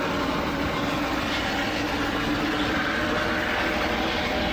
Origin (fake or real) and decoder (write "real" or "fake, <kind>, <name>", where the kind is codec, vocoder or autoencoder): real